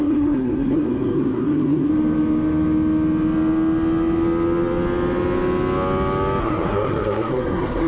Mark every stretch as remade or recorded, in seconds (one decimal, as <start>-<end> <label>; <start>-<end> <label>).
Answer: 0.0-1.9 remade; 1.9-6.4 recorded; 6.4-7.9 remade